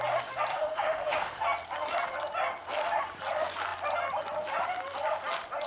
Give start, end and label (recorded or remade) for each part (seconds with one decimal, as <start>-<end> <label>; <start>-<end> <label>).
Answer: 0.0-0.5 recorded; 0.5-1.4 remade; 1.4-5.7 recorded